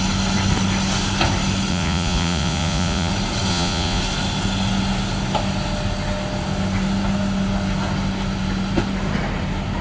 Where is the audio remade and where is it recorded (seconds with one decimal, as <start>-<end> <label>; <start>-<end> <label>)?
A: 0.0-1.7 recorded; 1.7-3.1 remade; 3.1-3.5 recorded; 3.5-4.0 remade; 4.0-9.8 recorded